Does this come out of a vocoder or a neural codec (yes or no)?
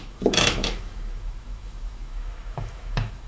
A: yes